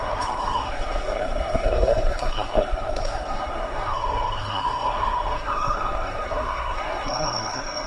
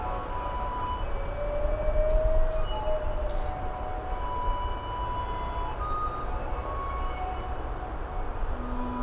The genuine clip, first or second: second